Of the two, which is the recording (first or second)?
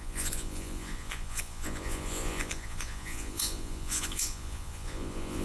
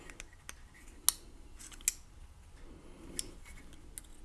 second